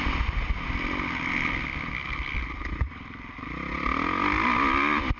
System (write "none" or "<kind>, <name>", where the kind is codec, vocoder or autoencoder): none